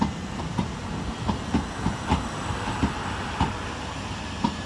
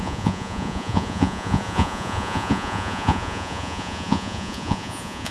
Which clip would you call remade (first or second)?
second